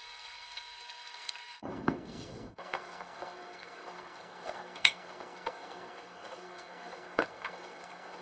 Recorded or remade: remade